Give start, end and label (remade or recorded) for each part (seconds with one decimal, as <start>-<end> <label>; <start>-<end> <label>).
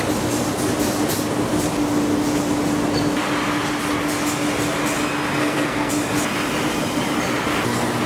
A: 0.0-5.4 recorded; 5.4-5.9 remade; 5.9-8.1 recorded